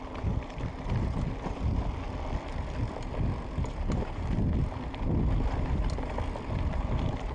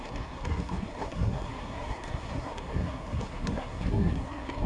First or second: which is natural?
first